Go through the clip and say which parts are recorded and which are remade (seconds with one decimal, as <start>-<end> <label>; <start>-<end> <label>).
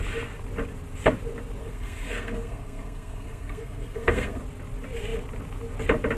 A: 0.0-1.6 recorded; 1.6-4.4 remade; 4.4-6.2 recorded